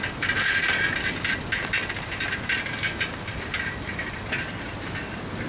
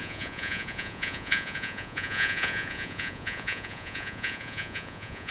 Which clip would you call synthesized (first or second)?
second